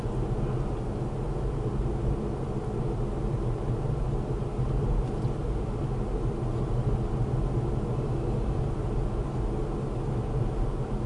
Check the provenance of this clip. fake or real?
real